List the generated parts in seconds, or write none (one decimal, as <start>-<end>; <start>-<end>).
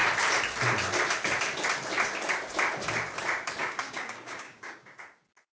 3.6-5.0